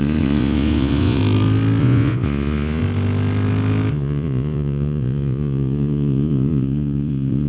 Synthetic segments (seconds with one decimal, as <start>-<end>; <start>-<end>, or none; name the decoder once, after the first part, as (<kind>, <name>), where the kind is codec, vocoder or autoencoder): 0.0-1.2 (vocoder, Vocos); 1.8-2.8; 3.9-7.5